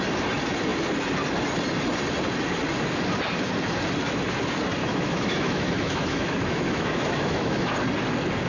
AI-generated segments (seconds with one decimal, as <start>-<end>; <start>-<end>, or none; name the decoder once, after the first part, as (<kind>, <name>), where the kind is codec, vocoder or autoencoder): 4.8-7.7 (autoencoder, DAC-VAE)